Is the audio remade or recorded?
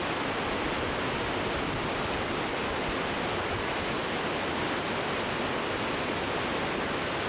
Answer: recorded